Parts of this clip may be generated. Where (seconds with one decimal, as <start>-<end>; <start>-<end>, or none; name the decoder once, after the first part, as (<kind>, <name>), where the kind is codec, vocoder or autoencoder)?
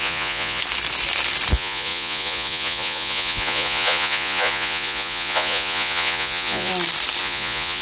0.0-0.6 (vocoder, Vocos); 1.5-6.7; 7.2-7.8